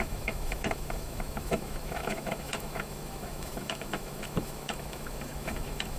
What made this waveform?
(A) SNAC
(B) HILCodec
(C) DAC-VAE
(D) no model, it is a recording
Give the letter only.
C